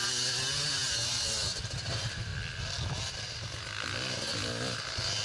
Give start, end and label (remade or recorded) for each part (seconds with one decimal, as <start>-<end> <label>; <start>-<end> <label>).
0.0-5.2 recorded